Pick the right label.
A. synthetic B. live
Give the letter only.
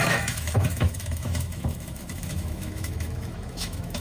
A